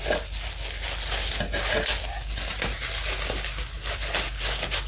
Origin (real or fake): real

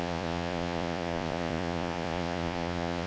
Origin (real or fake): fake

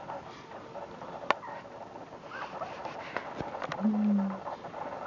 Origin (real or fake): real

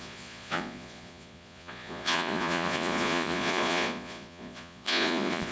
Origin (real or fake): fake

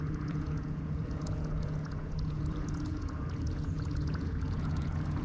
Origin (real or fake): fake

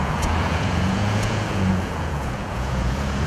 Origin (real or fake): fake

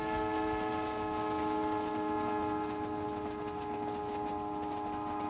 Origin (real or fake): real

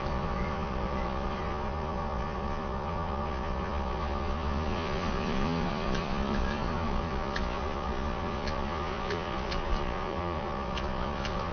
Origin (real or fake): fake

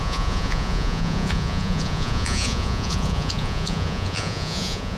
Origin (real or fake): fake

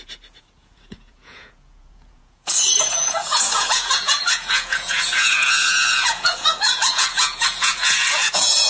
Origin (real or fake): fake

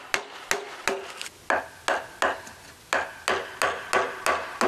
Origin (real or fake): real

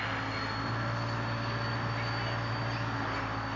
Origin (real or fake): real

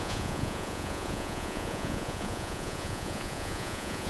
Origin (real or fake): fake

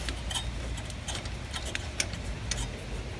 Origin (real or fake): real